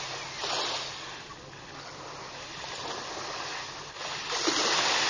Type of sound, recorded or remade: recorded